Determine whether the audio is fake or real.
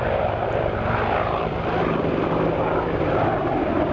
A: fake